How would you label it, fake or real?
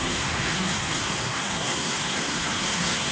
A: fake